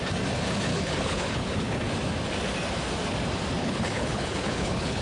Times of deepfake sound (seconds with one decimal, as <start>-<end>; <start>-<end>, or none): 0.7-1.8; 3.6-5.0